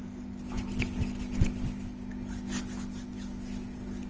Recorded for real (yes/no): yes